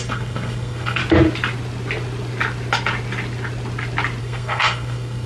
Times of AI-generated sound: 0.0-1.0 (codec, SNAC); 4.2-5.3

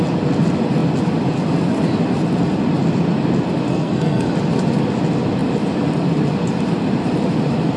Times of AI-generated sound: 3.7-4.3 (codec, SNAC)